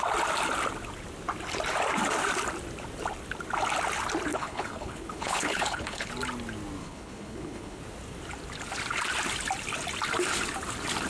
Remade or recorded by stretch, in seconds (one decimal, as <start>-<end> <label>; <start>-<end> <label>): 0.0-4.3 recorded; 4.3-6.1 remade; 6.1-6.8 recorded; 6.8-7.8 remade; 7.8-11.1 recorded